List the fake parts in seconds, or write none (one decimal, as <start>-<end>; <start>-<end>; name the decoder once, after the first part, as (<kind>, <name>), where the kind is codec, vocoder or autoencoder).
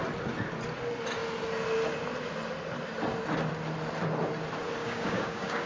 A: 4.8-5.7 (codec, DAC)